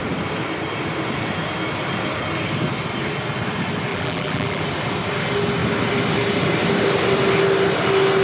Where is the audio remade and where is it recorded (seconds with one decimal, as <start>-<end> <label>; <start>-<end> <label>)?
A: 0.0-3.9 recorded; 3.9-4.6 remade; 4.6-8.2 recorded